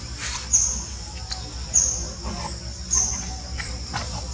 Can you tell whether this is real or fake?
fake